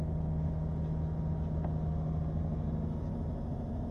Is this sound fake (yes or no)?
no